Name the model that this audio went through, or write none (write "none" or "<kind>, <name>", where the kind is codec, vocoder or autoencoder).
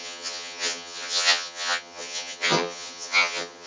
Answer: vocoder, HiFi-GAN